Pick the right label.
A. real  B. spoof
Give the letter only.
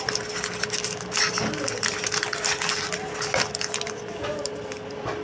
A